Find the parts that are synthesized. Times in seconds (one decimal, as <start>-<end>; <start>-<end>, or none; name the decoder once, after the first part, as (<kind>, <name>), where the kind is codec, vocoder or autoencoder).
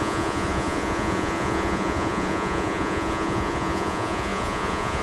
0.0-5.0 (vocoder, Vocos)